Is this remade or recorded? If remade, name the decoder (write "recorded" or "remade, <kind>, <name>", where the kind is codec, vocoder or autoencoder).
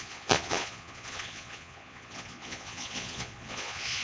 remade, vocoder, Vocos